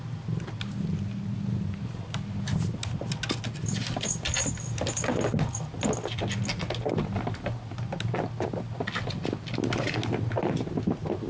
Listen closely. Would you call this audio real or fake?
real